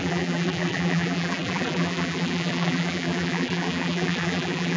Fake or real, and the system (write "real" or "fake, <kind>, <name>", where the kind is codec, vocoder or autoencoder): fake, vocoder, BigVGAN v2